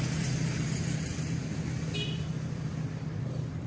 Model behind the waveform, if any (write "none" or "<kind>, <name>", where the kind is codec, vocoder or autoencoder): none